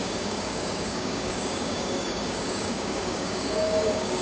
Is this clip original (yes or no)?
no